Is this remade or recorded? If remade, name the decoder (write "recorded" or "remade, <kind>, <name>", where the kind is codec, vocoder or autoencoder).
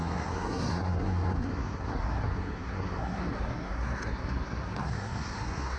remade, codec, SNAC